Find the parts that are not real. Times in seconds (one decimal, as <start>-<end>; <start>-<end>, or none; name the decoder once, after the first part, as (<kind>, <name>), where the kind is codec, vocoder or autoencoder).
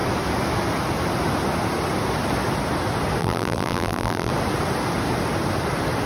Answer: 3.2-4.3 (vocoder, BigVGAN v2)